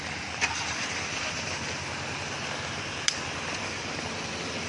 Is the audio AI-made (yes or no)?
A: no